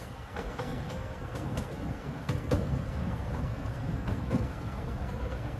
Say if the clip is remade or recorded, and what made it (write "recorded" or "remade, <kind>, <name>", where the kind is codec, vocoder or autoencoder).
remade, codec, SNAC